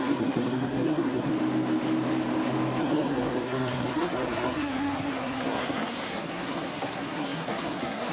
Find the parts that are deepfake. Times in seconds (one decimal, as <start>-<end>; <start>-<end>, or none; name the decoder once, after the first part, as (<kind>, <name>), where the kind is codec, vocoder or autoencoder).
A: 0.0-1.3 (codec, SNAC); 2.8-8.1